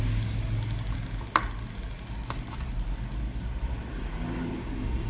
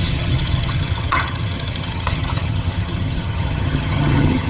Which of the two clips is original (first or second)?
first